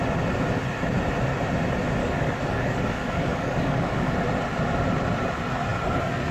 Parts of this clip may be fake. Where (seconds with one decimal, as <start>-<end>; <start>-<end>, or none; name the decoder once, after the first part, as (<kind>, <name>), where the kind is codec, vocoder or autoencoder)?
2.0-4.1 (codec, DAC)